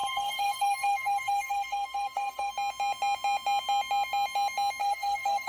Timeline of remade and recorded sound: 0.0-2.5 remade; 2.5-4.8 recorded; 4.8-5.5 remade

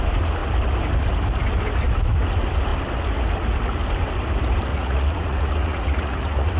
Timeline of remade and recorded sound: 0.0-4.7 recorded; 4.7-6.6 remade

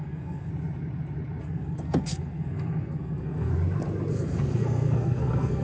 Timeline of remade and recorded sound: 0.0-0.5 remade; 0.5-1.4 recorded; 1.4-3.5 remade; 3.5-4.1 recorded; 4.1-5.6 remade

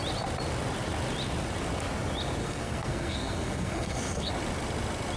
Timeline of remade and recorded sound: 0.0-2.4 recorded; 2.4-4.3 remade; 4.3-5.2 recorded

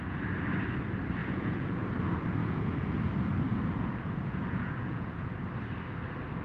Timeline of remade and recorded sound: 0.0-1.2 recorded; 1.2-1.8 remade; 1.8-2.4 recorded; 2.4-3.1 remade; 3.1-3.5 recorded; 3.5-5.5 remade; 5.5-6.4 recorded

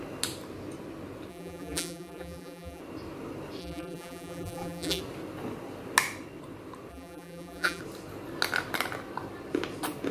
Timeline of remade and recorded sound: 0.0-1.3 recorded; 1.3-2.8 remade; 2.8-3.6 recorded; 3.6-5.0 remade; 5.0-6.9 recorded; 6.9-7.8 remade; 7.8-10.1 recorded